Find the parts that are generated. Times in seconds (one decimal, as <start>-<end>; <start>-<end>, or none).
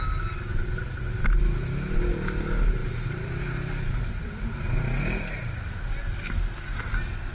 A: 2.8-4.2